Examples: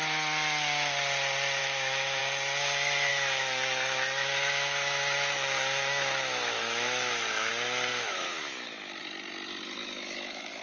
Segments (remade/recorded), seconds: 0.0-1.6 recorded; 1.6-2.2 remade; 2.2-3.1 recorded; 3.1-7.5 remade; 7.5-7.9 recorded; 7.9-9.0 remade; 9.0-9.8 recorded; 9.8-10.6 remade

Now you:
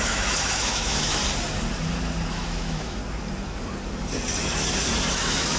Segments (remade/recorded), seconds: 0.0-1.2 remade; 1.2-2.3 recorded; 2.3-3.0 remade; 3.0-5.1 recorded; 5.1-5.6 remade

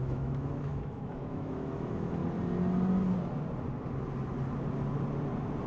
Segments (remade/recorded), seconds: 0.0-2.2 remade; 2.2-5.7 recorded